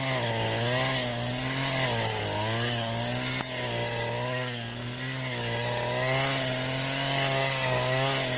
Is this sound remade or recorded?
recorded